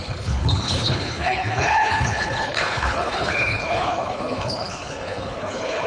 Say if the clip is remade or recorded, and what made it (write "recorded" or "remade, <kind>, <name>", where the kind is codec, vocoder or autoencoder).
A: remade, codec, HILCodec